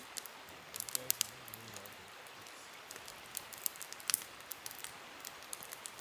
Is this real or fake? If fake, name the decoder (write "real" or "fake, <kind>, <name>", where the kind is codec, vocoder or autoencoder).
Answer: real